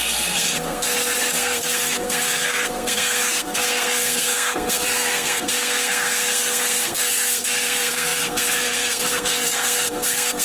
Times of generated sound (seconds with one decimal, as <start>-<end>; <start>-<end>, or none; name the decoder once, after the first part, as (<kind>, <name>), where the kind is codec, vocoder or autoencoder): 0.0-10.4 (codec, SNAC)